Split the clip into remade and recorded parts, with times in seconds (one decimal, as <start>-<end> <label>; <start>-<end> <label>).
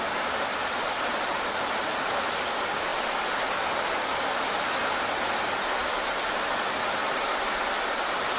0.0-8.4 recorded